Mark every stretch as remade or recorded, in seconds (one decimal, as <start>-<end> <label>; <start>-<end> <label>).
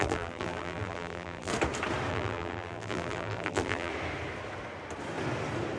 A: 0.0-1.5 remade; 1.5-2.1 recorded; 2.1-3.9 remade; 3.9-5.8 recorded